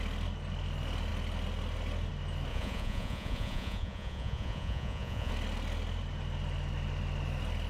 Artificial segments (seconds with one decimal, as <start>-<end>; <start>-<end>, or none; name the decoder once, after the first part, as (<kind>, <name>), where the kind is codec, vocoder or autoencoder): 2.5-5.3 (vocoder, Vocos)